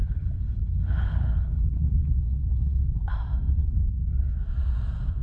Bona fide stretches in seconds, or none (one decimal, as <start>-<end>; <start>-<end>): 3.1-3.6; 4.3-5.2